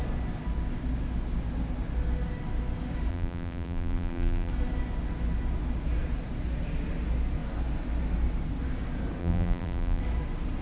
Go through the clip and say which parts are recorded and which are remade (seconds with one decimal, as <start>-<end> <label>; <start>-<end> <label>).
0.0-3.1 recorded; 3.1-4.5 remade; 4.5-9.2 recorded; 9.2-10.0 remade; 10.0-10.6 recorded